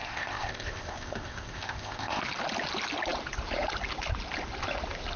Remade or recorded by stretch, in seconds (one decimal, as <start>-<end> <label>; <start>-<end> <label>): 0.0-2.2 remade; 2.2-5.2 recorded